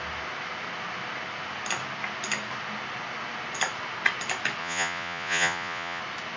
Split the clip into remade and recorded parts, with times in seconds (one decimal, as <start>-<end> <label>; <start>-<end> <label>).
0.0-4.6 recorded; 4.6-6.0 remade; 6.0-6.4 recorded